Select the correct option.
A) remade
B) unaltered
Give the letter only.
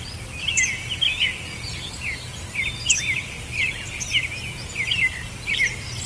B